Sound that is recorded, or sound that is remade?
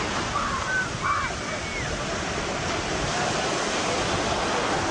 recorded